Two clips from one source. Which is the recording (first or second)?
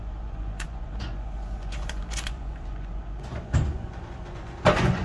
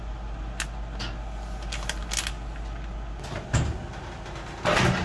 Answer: second